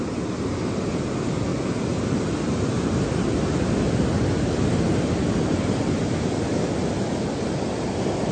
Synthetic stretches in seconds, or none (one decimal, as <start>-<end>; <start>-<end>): none